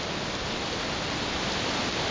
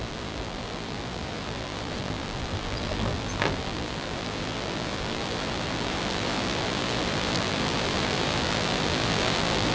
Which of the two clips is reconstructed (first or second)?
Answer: second